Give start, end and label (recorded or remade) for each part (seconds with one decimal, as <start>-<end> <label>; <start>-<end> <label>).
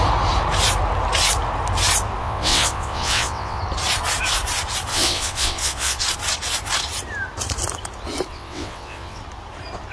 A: 0.0-2.2 recorded; 2.2-3.6 remade; 3.6-4.9 recorded; 4.9-6.0 remade; 6.0-8.3 recorded; 8.3-9.2 remade; 9.2-9.9 recorded